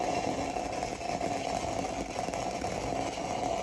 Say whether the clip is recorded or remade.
recorded